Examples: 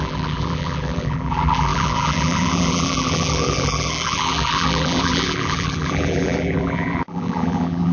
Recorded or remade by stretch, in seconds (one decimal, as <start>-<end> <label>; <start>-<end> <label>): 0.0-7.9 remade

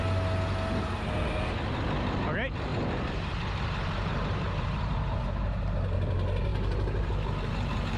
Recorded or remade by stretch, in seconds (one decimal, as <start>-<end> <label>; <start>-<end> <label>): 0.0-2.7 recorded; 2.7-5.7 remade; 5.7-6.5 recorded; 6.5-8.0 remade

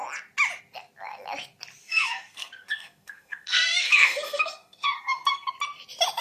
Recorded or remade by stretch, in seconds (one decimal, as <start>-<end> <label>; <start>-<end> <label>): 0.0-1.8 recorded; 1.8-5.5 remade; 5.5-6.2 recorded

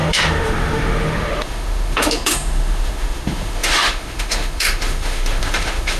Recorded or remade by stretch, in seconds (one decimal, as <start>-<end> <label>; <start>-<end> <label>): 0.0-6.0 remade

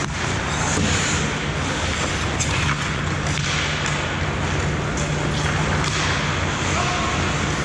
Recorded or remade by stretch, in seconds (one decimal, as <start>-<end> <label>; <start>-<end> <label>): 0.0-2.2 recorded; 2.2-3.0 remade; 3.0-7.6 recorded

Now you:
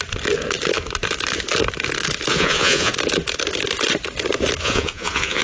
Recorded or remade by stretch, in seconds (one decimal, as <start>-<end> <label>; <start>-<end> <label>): 0.0-2.3 recorded; 2.3-2.9 remade; 2.9-4.6 recorded; 4.6-5.4 remade